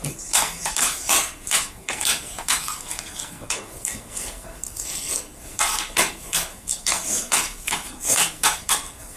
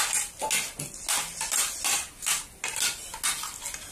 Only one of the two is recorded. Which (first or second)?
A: second